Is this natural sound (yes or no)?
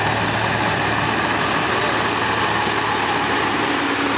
yes